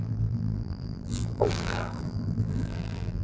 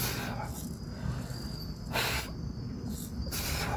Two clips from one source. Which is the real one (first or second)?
second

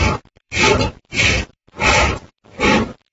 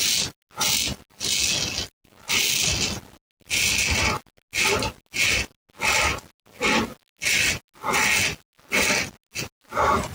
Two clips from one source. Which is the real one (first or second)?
second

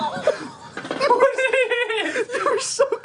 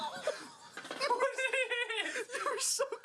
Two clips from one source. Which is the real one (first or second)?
second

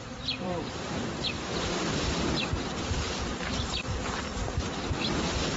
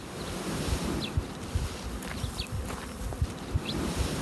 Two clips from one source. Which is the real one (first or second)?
second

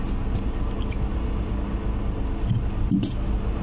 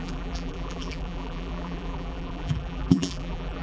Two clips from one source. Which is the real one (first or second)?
first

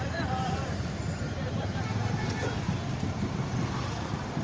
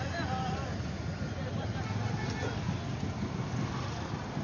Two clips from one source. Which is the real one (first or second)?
second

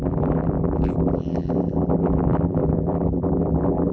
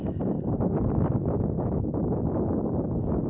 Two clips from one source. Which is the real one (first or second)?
second